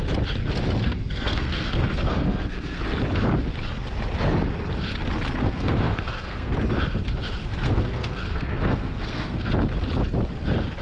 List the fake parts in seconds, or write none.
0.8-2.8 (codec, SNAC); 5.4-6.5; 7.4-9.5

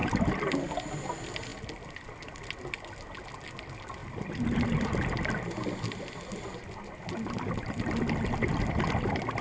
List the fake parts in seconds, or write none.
none

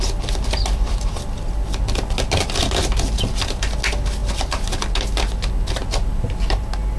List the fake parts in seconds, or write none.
none

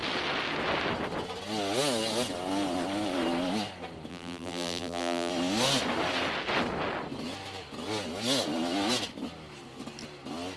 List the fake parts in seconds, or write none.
4.1-5.3 (vocoder, BigVGAN v2)

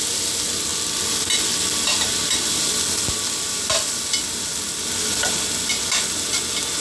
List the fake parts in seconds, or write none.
none

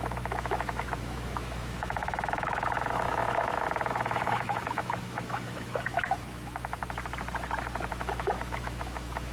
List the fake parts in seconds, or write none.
0.0-6.8 (autoencoder, DAC-VAE); 7.9-9.3

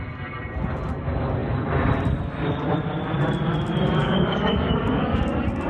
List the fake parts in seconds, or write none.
4.0-5.2 (codec, DAC)

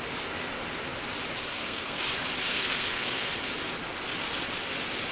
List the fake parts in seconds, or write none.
1.5-2.0 (codec, SNAC); 2.5-3.3